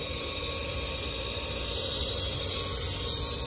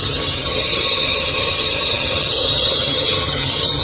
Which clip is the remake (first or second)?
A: second